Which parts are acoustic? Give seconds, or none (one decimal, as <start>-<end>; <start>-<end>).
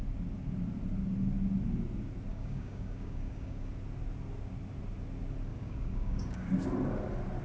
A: 0.0-2.3; 3.7-5.5; 6.5-7.4